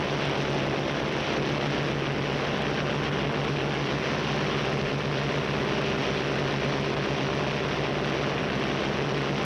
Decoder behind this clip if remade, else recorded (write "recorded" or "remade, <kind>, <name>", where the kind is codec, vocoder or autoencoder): recorded